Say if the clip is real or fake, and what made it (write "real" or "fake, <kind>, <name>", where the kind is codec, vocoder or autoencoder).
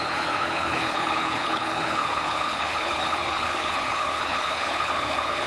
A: fake, codec, HILCodec